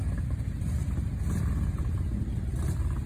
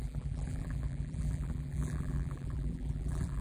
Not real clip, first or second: second